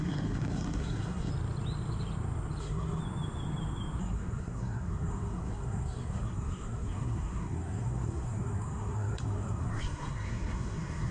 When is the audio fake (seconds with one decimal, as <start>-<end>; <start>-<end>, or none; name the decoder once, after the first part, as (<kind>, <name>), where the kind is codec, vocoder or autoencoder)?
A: 0.0-1.3 (codec, SNAC); 2.6-3.0; 4.0-11.1